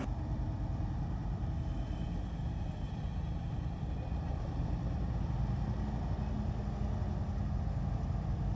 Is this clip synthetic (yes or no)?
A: no